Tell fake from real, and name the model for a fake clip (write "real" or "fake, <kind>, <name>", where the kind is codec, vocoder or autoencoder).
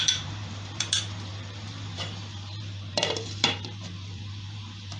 fake, vocoder, BigVGAN v2